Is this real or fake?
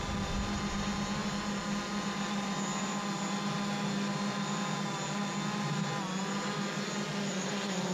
real